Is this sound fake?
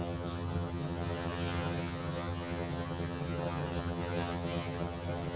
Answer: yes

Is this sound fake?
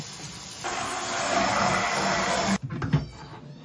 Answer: no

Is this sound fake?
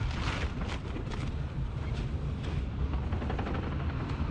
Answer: no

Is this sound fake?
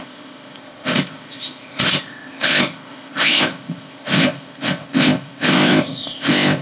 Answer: yes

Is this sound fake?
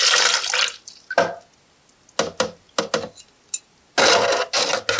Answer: no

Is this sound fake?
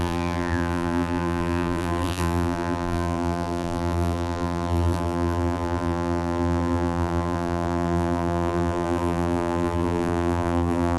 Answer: yes